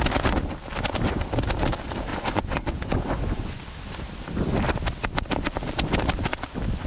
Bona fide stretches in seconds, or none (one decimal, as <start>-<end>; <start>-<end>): 0.0-2.1; 3.6-6.9